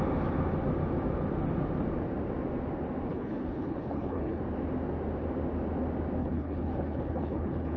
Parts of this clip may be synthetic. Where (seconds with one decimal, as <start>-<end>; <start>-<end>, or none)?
3.1-4.4; 6.2-7.8